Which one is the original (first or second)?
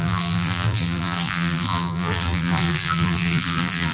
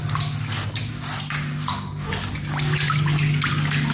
second